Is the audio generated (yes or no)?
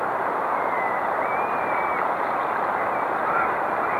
no